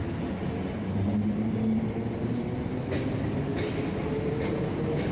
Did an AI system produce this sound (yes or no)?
no